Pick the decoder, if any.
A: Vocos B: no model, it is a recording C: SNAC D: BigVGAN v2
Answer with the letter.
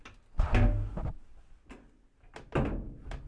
B